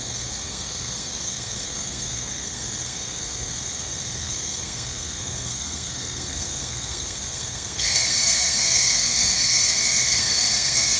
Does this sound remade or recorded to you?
remade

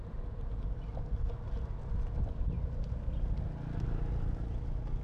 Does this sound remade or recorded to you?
recorded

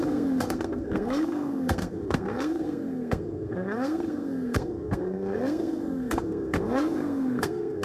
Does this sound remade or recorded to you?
remade